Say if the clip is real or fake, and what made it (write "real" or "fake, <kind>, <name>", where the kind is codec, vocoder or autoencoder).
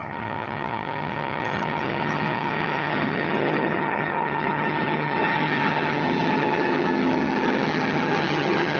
fake, vocoder, HiFi-GAN